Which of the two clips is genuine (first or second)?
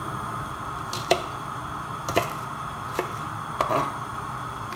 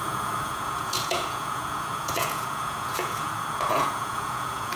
first